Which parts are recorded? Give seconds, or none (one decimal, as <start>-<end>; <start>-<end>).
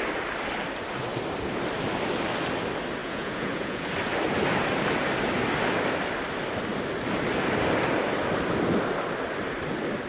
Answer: 0.0-3.0; 3.8-10.1